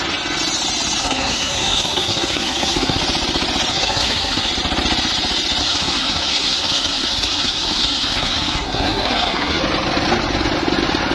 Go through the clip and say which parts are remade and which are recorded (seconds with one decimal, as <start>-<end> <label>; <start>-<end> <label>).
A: 0.0-1.0 recorded; 1.0-3.0 remade; 3.0-3.7 recorded; 3.7-4.5 remade; 4.5-5.6 recorded; 5.6-9.6 remade; 9.6-11.1 recorded